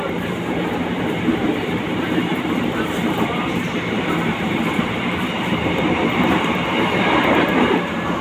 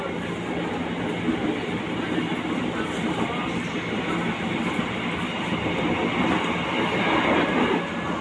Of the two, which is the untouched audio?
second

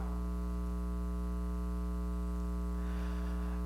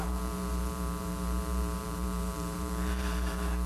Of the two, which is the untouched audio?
first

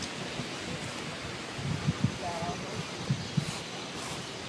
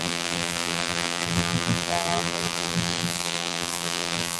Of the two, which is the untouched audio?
first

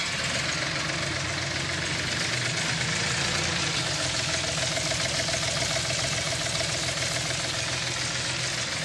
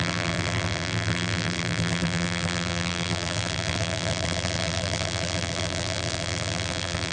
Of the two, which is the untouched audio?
first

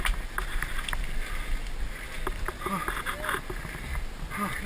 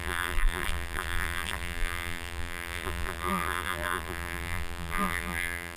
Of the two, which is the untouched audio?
first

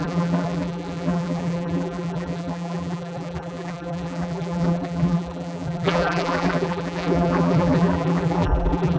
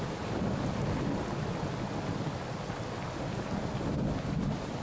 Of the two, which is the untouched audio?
second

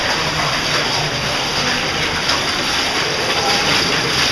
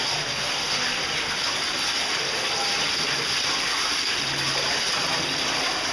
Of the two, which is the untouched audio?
second